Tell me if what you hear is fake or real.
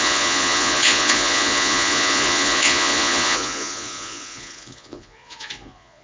fake